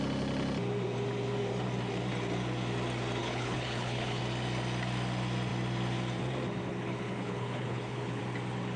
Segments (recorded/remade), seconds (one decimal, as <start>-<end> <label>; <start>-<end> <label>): 0.0-3.2 recorded; 3.2-4.2 remade; 4.2-6.7 recorded; 6.7-8.2 remade; 8.2-8.8 recorded

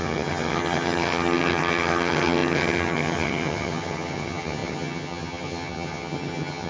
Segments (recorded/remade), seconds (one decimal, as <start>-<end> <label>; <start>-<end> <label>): 0.0-6.7 remade

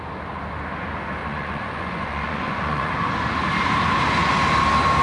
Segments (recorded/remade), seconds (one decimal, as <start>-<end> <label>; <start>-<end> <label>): 0.0-1.2 recorded; 1.2-2.9 remade; 2.9-5.0 recorded

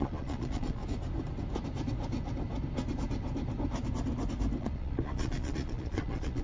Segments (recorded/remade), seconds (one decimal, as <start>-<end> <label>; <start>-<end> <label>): 0.0-0.8 remade; 0.8-4.6 recorded; 4.6-6.4 remade

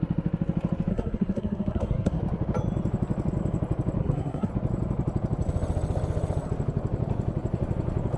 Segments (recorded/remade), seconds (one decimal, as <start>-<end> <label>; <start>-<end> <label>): 0.0-0.9 recorded; 0.9-2.2 remade; 2.2-4.0 recorded; 4.0-4.5 remade; 4.5-8.2 recorded

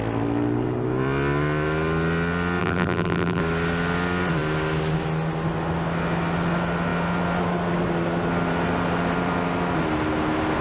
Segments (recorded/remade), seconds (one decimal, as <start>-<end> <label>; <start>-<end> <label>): 0.0-2.6 recorded; 2.6-3.4 remade; 3.4-10.6 recorded

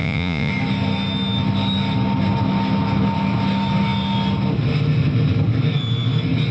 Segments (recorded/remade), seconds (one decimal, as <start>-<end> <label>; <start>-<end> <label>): 0.0-0.5 remade; 0.5-6.5 recorded